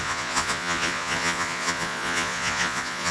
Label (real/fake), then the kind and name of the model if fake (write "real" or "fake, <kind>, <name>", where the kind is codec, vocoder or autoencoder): fake, vocoder, Vocos